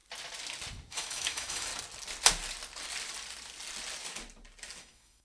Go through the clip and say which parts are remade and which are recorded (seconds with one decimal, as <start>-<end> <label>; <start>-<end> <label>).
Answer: 0.0-0.9 recorded; 0.9-1.7 remade; 1.7-4.8 recorded; 4.8-5.2 remade